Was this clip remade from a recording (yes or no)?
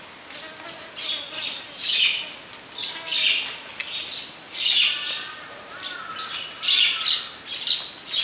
no